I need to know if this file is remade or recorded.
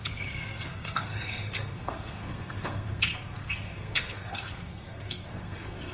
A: remade